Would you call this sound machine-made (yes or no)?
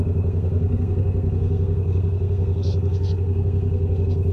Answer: yes